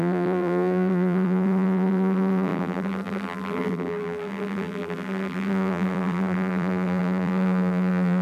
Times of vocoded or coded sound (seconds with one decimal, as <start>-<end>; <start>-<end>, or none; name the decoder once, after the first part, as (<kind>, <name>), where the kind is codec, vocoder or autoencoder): 0.0-8.2 (vocoder, BigVGAN v2)